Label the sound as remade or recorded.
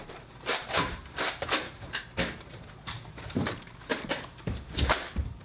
remade